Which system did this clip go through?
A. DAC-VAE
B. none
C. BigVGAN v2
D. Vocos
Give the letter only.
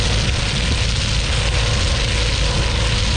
B